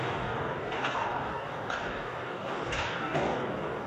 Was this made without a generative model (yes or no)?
no